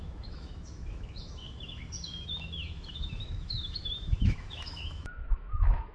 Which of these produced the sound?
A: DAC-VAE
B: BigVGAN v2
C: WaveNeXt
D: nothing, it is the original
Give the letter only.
A